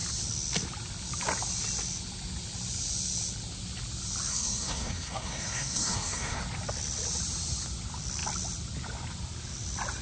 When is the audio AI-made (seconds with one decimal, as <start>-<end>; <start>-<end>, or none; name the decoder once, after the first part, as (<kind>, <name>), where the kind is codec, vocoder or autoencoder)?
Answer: 4.3-6.4 (codec, SNAC)